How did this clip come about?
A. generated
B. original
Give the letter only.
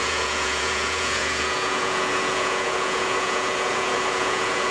A